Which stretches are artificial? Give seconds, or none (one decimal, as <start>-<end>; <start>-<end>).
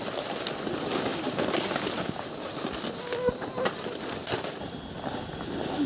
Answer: none